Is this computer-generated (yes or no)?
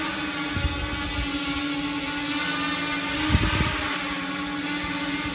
no